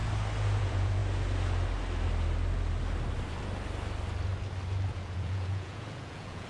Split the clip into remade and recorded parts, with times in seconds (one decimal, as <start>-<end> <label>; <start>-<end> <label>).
0.0-0.6 recorded; 0.6-1.0 remade; 1.0-4.9 recorded; 4.9-6.5 remade